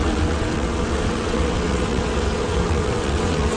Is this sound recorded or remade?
remade